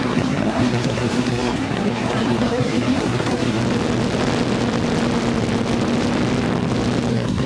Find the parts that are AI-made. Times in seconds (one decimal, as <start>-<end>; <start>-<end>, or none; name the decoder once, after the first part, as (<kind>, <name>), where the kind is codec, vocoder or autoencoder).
0.0-3.6 (codec, SNAC); 7.1-7.5